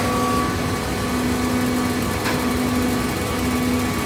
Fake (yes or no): no